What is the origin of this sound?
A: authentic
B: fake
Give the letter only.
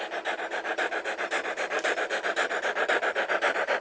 A